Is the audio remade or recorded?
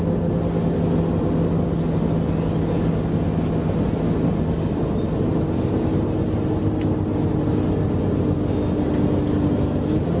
recorded